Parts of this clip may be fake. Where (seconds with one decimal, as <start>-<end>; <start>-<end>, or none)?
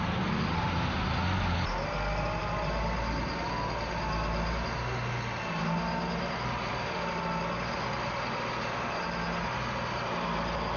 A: none